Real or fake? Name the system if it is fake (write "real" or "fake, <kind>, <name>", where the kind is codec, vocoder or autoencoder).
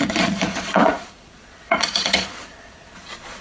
fake, vocoder, Vocos